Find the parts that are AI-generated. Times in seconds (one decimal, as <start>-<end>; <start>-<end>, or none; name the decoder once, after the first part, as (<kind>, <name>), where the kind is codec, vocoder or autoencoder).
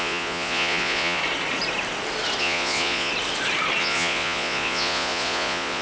0.0-1.2 (vocoder, Vocos); 2.4-3.1; 3.8-5.8